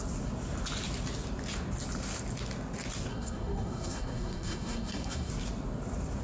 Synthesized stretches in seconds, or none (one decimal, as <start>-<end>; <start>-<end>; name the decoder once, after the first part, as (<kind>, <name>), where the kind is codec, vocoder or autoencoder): 3.1-5.3 (codec, SNAC)